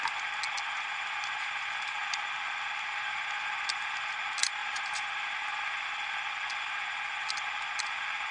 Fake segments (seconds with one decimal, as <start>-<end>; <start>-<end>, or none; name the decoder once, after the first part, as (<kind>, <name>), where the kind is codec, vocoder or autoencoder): 2.0-2.9 (vocoder, BigVGAN v2); 4.6-6.5

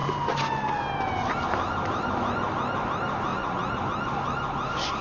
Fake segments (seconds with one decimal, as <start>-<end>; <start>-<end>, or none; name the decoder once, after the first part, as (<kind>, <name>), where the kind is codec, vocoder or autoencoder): 3.3-3.8 (vocoder, Vocos)

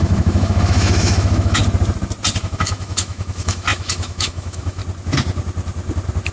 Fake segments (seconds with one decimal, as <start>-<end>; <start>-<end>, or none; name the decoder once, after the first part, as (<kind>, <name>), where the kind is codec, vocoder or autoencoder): 0.0-1.6 (autoencoder, DAC-VAE); 2.4-4.8